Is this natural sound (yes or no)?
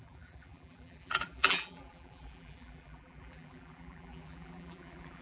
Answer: no